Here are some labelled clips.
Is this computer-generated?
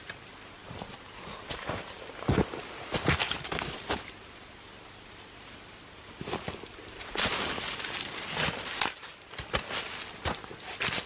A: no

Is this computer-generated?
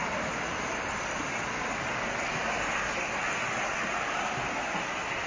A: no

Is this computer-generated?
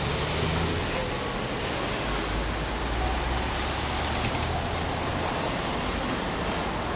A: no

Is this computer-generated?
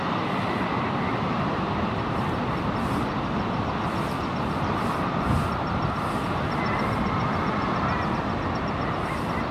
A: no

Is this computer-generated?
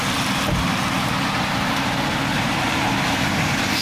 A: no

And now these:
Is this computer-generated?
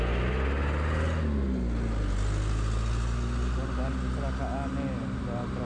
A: no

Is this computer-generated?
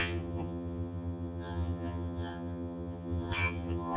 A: yes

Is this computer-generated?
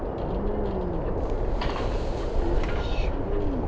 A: no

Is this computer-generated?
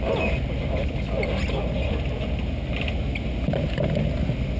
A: no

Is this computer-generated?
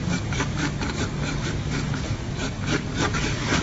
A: yes